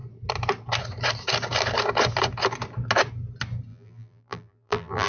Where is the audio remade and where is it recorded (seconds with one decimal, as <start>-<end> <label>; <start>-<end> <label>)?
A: 0.0-3.7 recorded; 3.7-5.1 remade